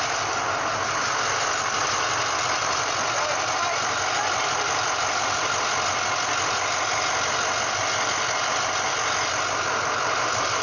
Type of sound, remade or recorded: recorded